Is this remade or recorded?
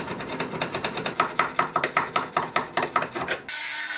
remade